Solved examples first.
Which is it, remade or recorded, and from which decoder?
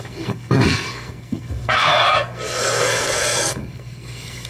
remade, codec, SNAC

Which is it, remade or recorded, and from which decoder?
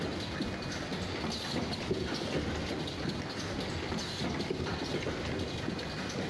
recorded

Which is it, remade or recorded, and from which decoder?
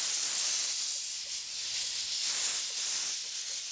recorded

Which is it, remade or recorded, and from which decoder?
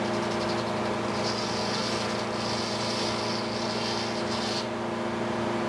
recorded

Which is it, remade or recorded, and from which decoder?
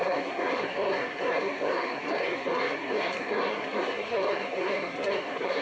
remade, codec, SNAC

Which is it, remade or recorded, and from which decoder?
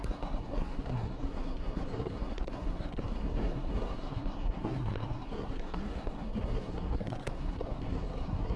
remade, codec, SNAC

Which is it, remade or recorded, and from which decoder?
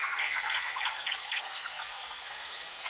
remade, codec, SNAC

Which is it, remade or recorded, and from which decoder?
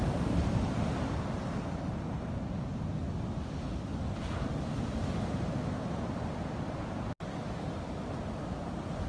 recorded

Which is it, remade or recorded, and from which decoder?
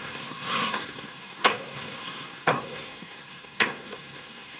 remade, codec, SNAC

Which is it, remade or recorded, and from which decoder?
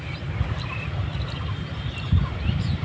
recorded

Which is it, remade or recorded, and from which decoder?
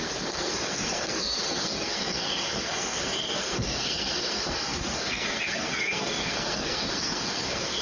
remade, codec, SNAC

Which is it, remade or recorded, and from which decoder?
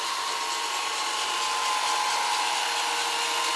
recorded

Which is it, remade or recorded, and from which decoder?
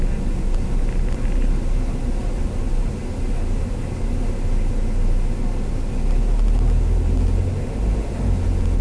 recorded